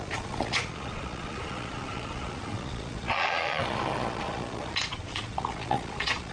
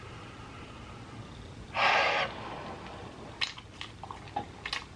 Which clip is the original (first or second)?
second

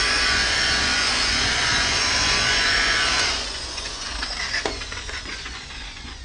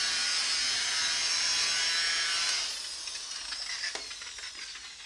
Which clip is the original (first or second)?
second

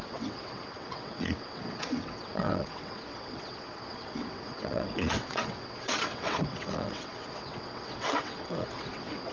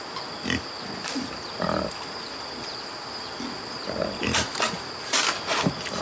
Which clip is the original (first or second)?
second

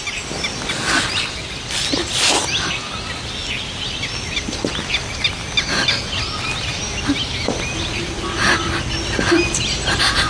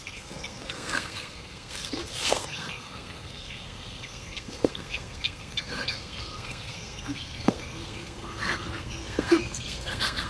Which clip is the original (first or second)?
first